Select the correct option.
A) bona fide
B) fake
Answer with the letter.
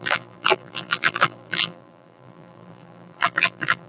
B